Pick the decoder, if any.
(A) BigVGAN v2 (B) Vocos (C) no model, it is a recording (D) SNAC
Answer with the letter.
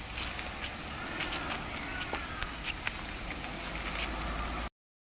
C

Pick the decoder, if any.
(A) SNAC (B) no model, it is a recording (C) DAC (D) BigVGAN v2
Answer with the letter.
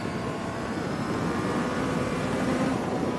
D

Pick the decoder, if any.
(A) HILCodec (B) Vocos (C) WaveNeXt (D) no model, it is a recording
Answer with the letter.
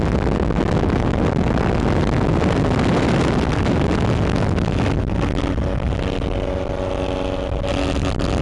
D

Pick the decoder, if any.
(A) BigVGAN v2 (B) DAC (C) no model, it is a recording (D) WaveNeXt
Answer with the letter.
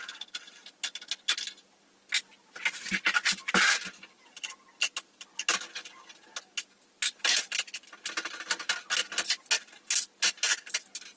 C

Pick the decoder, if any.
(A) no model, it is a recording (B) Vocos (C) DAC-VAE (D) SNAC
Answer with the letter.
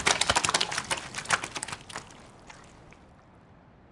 A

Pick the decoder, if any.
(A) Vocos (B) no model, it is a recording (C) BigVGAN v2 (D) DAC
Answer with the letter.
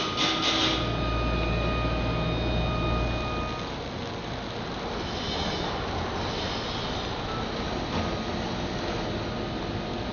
B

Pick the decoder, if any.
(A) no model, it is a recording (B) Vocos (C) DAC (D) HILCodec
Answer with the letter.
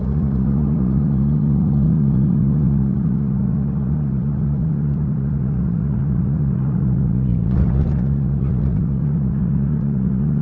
B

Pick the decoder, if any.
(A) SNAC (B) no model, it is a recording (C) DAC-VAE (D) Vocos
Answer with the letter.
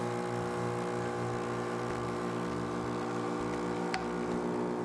B